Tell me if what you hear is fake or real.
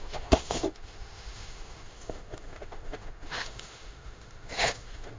fake